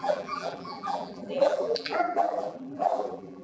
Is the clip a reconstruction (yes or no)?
yes